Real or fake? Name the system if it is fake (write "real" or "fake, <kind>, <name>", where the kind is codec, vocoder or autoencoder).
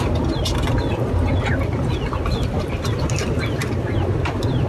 real